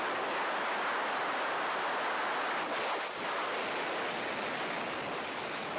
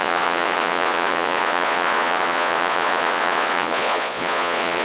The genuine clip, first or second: first